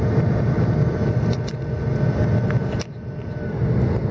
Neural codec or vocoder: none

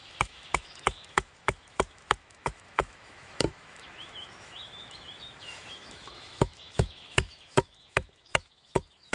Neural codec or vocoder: autoencoder, DAC-VAE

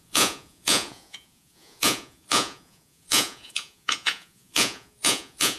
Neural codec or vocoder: vocoder, Vocos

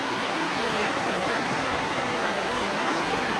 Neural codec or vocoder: codec, SNAC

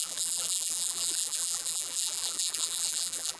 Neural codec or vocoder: vocoder, BigVGAN v2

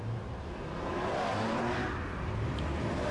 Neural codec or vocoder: none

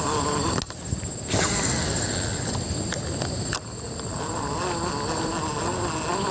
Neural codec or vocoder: none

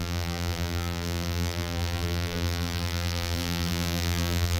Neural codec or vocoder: vocoder, BigVGAN v2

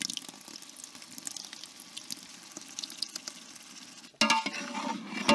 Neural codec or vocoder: none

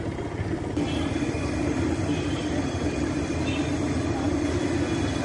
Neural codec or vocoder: none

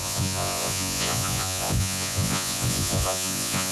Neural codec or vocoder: vocoder, Vocos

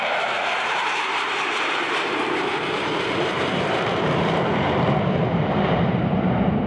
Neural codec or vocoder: vocoder, BigVGAN v2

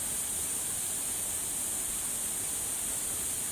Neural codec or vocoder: none